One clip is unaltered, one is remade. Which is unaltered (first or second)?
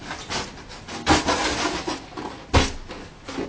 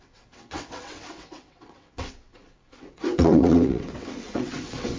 first